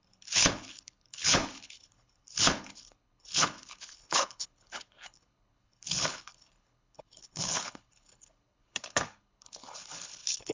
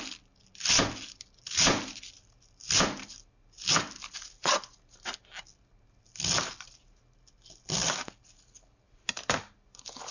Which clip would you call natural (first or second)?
second